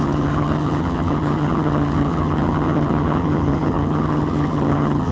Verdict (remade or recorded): remade